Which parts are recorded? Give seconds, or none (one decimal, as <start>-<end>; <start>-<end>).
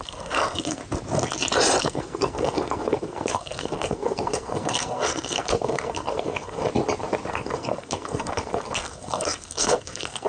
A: 0.8-1.8; 6.6-7.3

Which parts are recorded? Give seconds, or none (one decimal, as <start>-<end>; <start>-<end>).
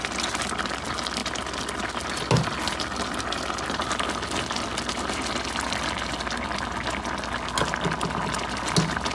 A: 0.0-9.1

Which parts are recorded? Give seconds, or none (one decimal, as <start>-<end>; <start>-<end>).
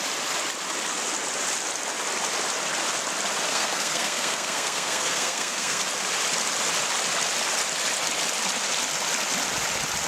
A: 0.0-3.5; 5.8-10.1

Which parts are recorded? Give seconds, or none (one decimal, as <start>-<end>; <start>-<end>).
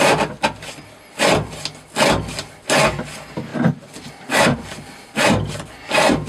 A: 0.0-6.3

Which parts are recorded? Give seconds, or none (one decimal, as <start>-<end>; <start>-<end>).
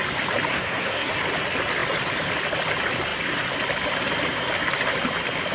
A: 0.0-0.5; 1.1-5.5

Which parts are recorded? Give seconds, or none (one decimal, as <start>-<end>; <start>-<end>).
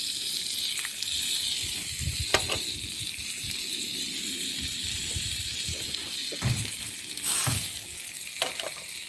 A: 0.0-9.1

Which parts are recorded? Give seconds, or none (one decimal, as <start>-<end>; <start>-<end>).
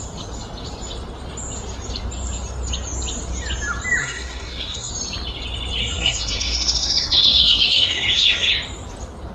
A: 0.0-4.0; 4.9-5.8; 8.5-9.3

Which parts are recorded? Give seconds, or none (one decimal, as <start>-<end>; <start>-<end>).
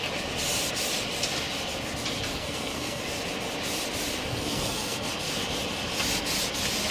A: 0.0-2.3; 3.0-4.3; 5.1-6.9